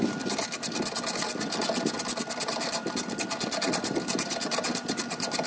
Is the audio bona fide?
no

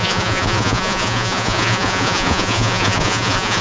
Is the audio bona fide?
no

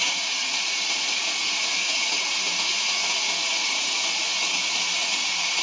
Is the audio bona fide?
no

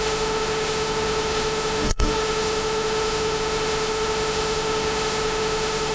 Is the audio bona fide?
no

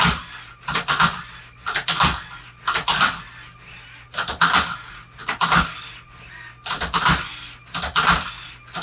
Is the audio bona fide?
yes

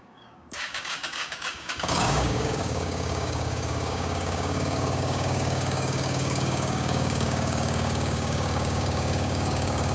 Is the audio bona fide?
no